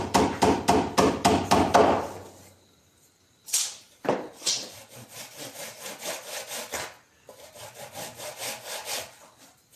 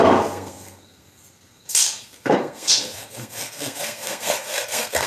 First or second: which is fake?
second